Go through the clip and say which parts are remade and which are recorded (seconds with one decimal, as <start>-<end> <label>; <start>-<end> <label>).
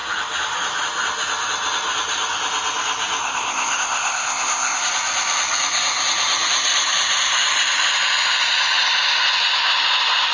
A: 0.0-3.2 recorded; 3.2-4.8 remade; 4.8-10.3 recorded